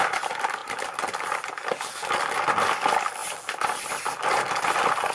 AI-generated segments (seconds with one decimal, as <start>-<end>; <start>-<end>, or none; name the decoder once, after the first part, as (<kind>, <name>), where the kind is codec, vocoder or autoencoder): none